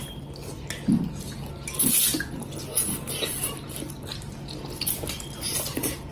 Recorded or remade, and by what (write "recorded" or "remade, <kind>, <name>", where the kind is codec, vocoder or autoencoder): recorded